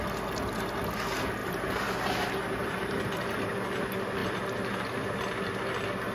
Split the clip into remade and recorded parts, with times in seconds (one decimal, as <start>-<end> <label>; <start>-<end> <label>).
0.0-1.4 recorded; 1.4-3.8 remade; 3.8-6.1 recorded